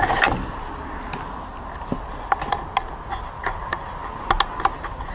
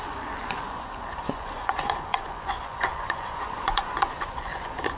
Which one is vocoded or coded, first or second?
second